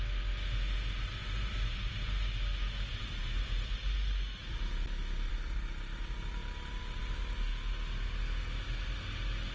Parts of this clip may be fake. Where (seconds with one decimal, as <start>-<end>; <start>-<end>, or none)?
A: 6.4-7.0; 7.5-8.2